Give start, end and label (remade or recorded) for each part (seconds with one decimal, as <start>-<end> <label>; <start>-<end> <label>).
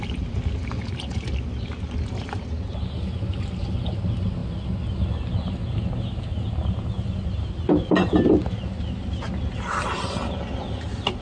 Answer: 0.0-11.2 recorded